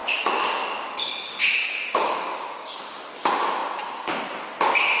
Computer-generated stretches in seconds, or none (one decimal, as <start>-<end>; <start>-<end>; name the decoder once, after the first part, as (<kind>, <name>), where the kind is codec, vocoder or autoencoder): 0.0-1.0 (codec, DAC); 1.6-2.8